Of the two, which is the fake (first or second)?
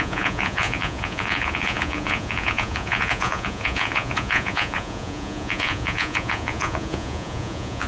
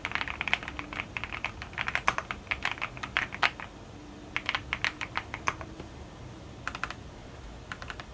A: first